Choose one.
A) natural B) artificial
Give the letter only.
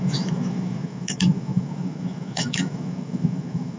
B